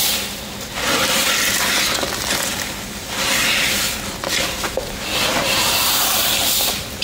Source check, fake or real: real